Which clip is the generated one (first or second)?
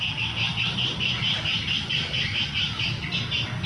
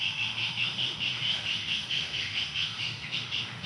second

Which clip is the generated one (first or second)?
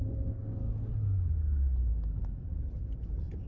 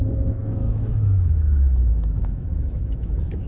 second